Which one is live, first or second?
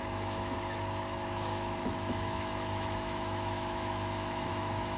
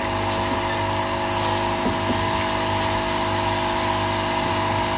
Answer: second